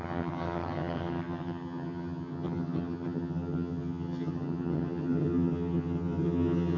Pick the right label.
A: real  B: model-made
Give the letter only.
B